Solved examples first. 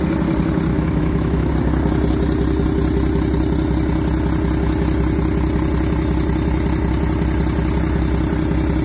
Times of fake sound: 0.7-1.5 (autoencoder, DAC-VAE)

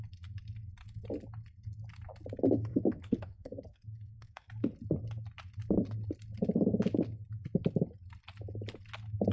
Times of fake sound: 2.7-4.5 (codec, SNAC)

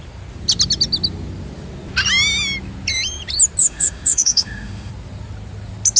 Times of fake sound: 3.6-4.9 (autoencoder, DAC-VAE)

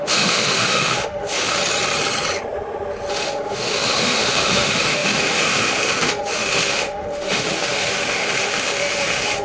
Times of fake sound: 0.0-1.6 (autoencoder, DAC-VAE); 3.1-9.4

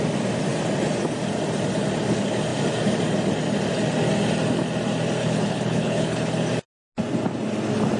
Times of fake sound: 5.2-6.3 (codec, HILCodec)

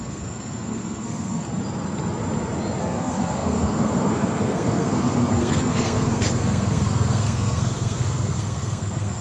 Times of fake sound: 0.0-1.5 (codec, SNAC); 2.8-9.2